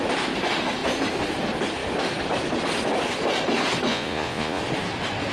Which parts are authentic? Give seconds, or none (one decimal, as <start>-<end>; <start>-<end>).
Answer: 0.0-3.9; 4.6-5.3